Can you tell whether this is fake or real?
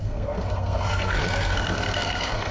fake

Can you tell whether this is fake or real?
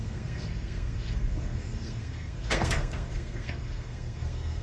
fake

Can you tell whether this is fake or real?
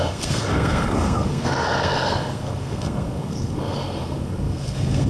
fake